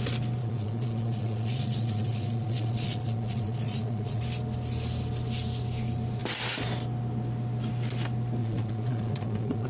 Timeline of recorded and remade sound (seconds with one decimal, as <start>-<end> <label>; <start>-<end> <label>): 0.0-0.4 recorded; 0.4-4.2 remade; 4.2-8.4 recorded; 8.4-9.7 remade